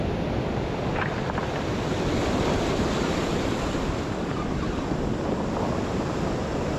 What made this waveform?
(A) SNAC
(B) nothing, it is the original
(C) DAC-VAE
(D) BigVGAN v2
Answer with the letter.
B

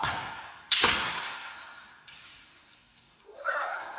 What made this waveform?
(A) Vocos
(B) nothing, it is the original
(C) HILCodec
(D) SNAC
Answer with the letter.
D